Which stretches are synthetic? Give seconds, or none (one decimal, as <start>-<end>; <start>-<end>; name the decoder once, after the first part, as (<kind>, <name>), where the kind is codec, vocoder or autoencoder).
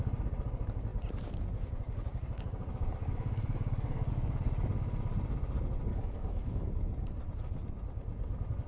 3.0-4.1 (codec, DAC); 5.9-6.7